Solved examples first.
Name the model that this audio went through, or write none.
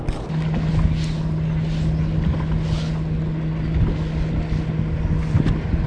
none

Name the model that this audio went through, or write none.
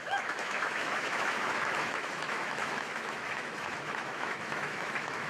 autoencoder, DAC-VAE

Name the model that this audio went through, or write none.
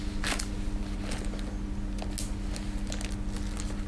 none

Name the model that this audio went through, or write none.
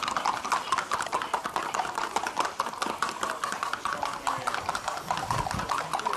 none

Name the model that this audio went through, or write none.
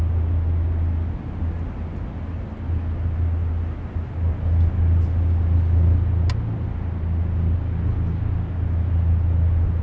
none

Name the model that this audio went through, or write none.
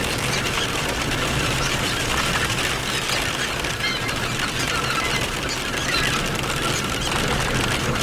none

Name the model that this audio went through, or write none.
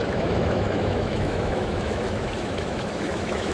autoencoder, DAC-VAE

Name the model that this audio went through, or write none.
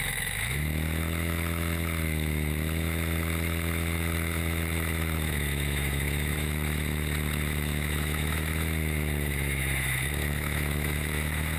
autoencoder, DAC-VAE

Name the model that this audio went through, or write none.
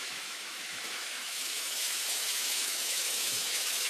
autoencoder, DAC-VAE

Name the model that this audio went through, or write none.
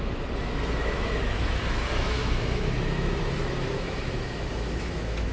autoencoder, DAC-VAE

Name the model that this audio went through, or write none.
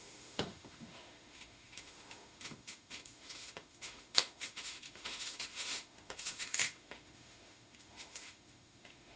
autoencoder, DAC-VAE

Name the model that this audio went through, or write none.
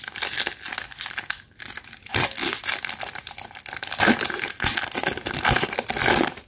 none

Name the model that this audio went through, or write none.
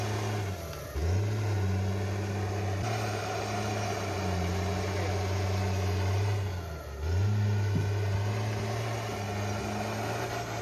none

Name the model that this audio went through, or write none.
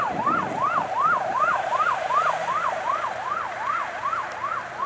none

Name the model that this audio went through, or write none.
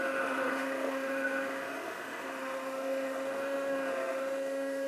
autoencoder, DAC-VAE